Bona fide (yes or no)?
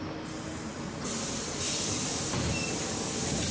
yes